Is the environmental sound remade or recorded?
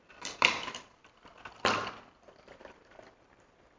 remade